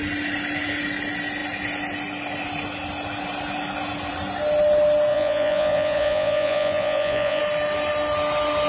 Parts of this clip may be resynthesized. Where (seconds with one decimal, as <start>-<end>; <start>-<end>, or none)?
5.1-7.4

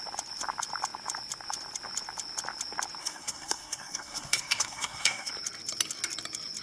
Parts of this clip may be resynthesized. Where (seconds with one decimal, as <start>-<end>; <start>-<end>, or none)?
3.0-5.3

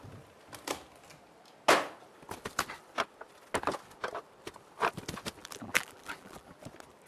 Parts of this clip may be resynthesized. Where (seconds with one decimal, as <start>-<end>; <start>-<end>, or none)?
5.4-6.6

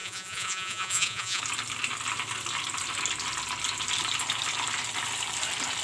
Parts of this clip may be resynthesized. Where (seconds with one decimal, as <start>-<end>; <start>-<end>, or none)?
0.0-1.4

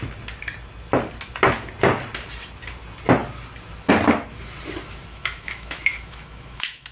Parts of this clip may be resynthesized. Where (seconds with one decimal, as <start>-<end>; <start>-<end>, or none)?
5.1-6.9

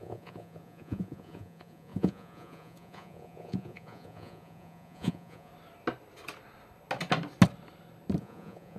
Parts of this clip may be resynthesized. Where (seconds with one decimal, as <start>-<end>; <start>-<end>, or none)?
0.0-5.5; 8.2-8.8